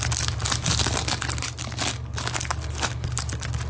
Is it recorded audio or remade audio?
recorded